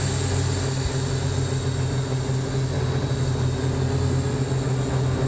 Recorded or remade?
recorded